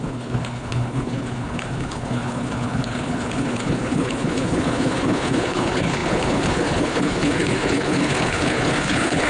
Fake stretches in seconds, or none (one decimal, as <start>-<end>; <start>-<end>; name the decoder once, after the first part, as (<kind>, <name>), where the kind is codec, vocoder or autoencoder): 0.0-9.3 (codec, HILCodec)